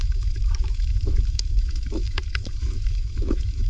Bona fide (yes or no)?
no